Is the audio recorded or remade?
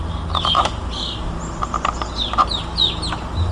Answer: recorded